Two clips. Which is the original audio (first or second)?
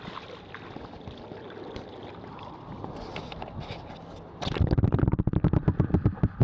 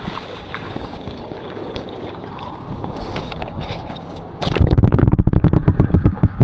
first